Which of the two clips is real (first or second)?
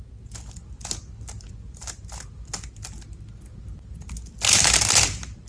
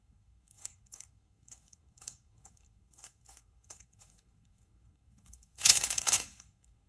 first